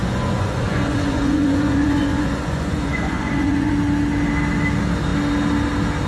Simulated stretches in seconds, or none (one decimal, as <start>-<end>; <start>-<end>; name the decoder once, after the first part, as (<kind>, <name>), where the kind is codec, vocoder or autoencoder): 0.0-3.7 (vocoder, Vocos)

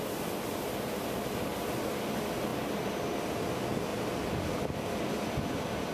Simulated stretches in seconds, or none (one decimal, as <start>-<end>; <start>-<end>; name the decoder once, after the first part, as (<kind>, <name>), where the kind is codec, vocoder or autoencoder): none